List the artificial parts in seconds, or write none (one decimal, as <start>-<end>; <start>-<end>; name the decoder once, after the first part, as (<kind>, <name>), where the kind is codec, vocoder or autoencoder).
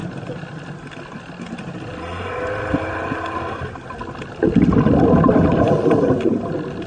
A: none